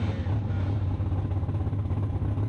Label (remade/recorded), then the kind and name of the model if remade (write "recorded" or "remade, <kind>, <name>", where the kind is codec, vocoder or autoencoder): recorded